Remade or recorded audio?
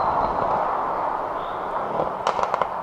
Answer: recorded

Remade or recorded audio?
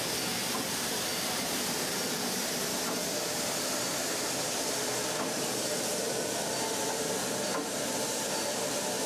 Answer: remade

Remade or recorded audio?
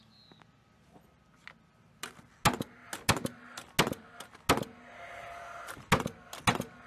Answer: recorded